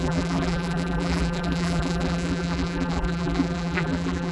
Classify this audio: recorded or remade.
remade